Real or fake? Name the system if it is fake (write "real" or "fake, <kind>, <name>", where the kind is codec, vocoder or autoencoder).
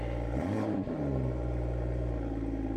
real